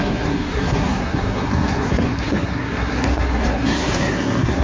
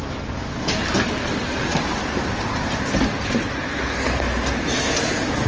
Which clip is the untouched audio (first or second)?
second